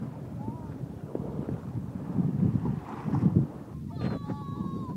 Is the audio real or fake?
real